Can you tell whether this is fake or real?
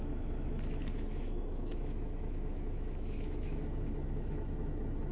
fake